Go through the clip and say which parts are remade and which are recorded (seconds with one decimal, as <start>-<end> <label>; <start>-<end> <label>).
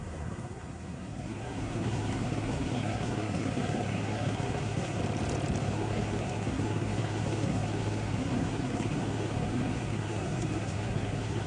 0.0-5.0 remade; 5.0-5.6 recorded; 5.6-11.5 remade